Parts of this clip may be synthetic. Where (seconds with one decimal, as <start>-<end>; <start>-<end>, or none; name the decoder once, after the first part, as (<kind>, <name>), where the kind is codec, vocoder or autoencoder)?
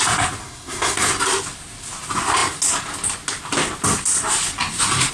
0.4-1.0 (codec, SNAC)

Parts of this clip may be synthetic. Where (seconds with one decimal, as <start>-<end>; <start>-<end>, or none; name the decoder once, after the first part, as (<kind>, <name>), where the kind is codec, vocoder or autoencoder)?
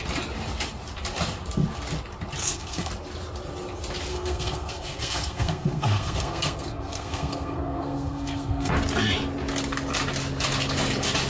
2.4-2.9 (codec, SNAC); 4.1-8.7